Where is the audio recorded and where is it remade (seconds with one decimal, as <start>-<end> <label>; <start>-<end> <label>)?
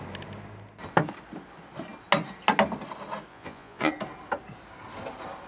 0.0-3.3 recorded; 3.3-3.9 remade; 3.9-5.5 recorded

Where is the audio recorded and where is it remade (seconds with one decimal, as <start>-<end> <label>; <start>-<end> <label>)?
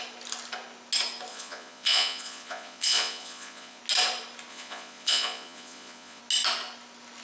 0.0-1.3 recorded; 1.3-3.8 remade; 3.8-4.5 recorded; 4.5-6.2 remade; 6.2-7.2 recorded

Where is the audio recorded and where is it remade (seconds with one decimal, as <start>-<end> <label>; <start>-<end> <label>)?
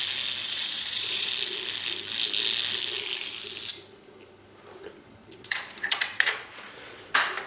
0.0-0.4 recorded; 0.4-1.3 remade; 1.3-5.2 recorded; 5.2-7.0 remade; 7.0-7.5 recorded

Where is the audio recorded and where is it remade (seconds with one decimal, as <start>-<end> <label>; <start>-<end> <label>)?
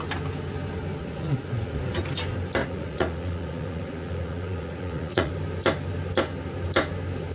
0.0-1.0 recorded; 1.0-1.8 remade; 1.8-2.6 recorded; 2.6-5.3 remade; 5.3-7.3 recorded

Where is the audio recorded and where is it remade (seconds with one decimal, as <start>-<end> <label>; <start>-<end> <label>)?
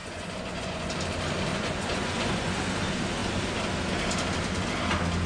0.0-0.9 remade; 0.9-1.5 recorded; 1.5-2.6 remade; 2.6-5.3 recorded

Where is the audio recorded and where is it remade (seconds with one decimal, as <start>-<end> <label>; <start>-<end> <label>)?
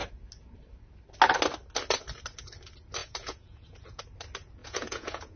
0.0-3.0 recorded; 3.0-4.0 remade; 4.0-4.6 recorded; 4.6-5.4 remade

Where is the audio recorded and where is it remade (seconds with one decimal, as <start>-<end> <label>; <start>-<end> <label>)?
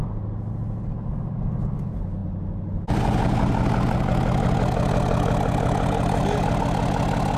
0.0-7.4 recorded